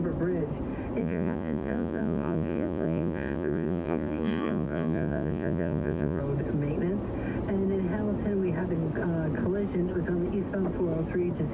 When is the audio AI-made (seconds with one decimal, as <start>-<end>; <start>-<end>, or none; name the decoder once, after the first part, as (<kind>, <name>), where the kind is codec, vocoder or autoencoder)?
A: 1.0-6.2 (vocoder, Vocos)